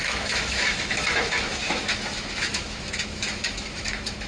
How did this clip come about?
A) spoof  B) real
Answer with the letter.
A